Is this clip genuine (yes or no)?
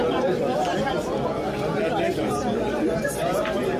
yes